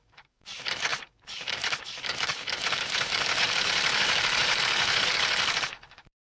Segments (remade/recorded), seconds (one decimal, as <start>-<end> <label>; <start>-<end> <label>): 0.0-6.2 remade